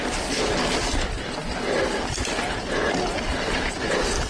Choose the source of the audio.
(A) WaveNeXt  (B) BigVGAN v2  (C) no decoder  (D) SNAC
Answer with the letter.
C